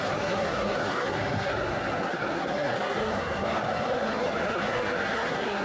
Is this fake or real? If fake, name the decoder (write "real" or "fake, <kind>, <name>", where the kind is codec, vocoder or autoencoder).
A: fake, codec, SNAC